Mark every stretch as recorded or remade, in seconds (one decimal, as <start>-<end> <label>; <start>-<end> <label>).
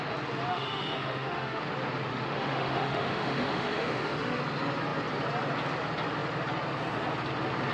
0.0-0.5 recorded; 0.5-1.6 remade; 1.6-2.1 recorded; 2.1-4.4 remade; 4.4-7.7 recorded